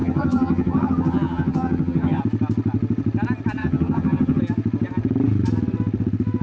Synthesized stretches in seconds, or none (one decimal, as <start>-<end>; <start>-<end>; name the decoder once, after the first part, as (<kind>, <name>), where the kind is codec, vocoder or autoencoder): 0.0-2.2 (vocoder, HiFi-GAN); 3.6-4.4